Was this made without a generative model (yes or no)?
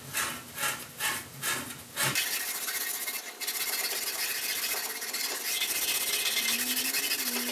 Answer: yes